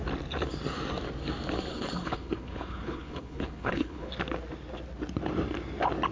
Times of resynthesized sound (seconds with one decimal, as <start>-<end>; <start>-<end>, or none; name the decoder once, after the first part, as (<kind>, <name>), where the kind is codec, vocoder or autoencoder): 1.7-4.1 (codec, HILCodec)